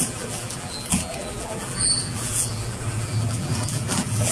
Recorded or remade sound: remade